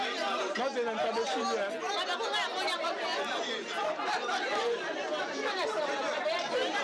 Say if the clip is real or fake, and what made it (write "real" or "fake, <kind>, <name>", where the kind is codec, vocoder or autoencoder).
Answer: real